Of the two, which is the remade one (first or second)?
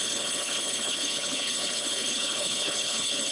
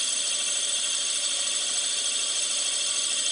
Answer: first